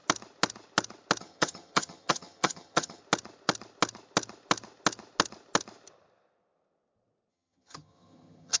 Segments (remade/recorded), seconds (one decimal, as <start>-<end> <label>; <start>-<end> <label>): 0.0-1.2 recorded; 1.2-3.0 remade; 3.0-7.3 recorded; 7.3-8.6 remade